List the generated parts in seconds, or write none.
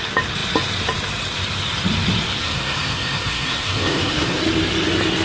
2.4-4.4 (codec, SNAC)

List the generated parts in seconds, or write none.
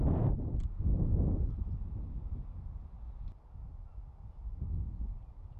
none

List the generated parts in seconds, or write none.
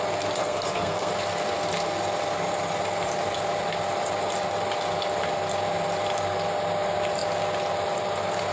0.4-1.1 (codec, SNAC)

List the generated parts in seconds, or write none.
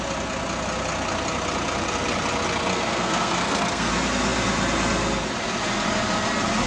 2.7-3.9 (codec, SNAC)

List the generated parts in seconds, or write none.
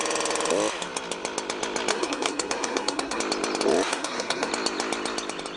1.9-3.2 (codec, SNAC); 3.9-4.5